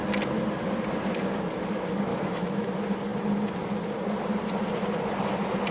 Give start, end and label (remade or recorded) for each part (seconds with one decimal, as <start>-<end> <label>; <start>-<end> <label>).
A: 0.0-2.1 recorded; 2.1-2.7 remade; 2.7-5.7 recorded